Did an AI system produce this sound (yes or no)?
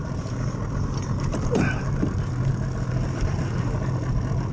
no